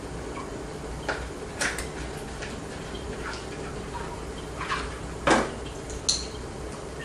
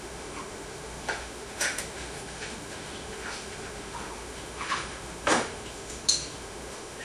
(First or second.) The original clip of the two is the first